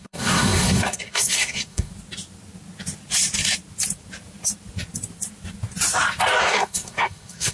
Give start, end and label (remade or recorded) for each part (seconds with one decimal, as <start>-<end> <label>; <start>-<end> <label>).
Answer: 0.0-1.9 remade; 1.9-6.4 recorded; 6.4-7.5 remade